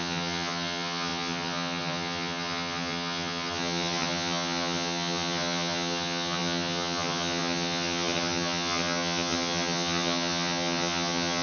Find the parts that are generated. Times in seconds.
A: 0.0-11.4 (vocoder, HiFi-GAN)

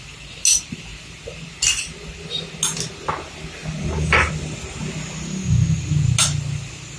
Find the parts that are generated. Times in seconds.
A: none

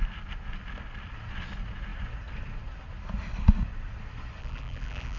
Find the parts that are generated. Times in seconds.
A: 4.4-5.2 (vocoder, BigVGAN v2)

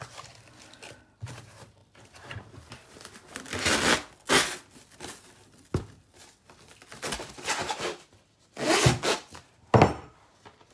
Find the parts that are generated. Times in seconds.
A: none

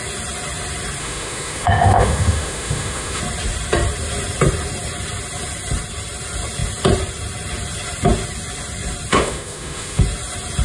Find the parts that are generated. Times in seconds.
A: 1.0-3.2 (autoencoder, DAC-VAE); 9.1-10.0

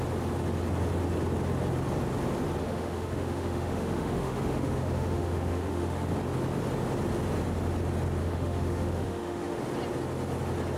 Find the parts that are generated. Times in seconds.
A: 2.6-6.1 (autoencoder, DAC-VAE); 8.2-9.6

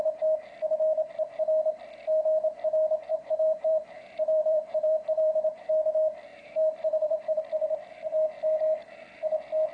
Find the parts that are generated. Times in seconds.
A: 3.1-5.7 (vocoder, BigVGAN v2); 6.3-7.4

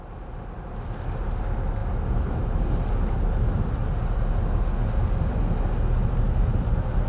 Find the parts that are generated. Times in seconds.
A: none